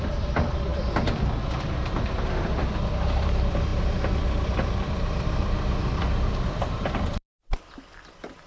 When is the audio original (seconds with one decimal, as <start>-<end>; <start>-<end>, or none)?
0.7-2.4